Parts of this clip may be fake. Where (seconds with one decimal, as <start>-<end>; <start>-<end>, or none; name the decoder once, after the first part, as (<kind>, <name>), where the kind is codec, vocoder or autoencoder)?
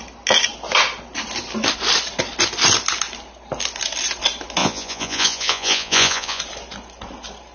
4.6-6.4 (vocoder, Vocos)